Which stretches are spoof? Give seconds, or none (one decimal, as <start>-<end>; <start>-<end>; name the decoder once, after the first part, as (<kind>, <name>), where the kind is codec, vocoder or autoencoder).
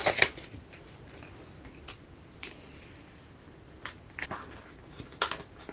none